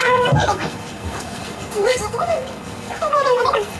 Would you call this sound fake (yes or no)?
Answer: yes